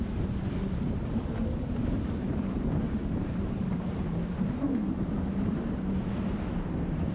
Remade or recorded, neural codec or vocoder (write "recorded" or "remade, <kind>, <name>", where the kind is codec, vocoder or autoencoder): remade, vocoder, BigVGAN v2